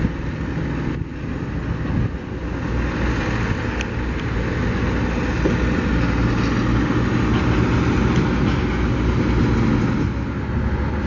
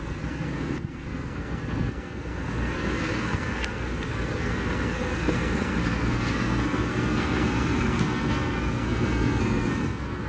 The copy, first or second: second